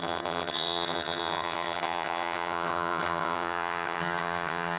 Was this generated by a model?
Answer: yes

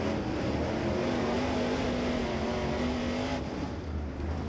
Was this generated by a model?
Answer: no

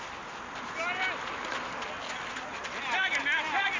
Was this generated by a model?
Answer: no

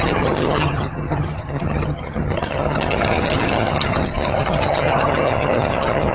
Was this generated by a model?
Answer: yes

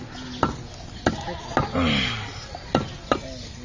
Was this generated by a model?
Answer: no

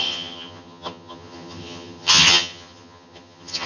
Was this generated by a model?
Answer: yes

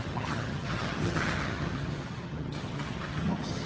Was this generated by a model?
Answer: yes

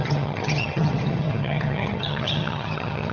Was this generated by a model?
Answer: yes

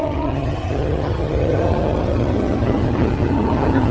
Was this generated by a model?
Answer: yes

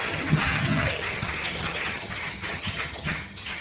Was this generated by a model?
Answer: yes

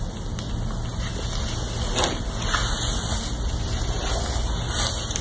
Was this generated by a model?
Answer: no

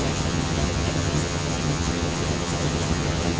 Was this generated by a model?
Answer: yes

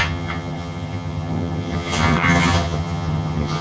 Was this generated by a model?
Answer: yes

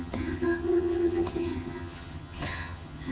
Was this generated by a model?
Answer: yes